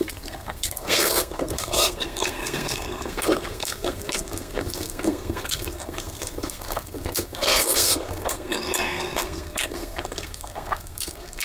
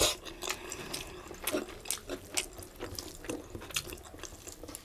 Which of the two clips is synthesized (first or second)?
first